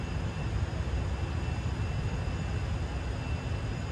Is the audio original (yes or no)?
yes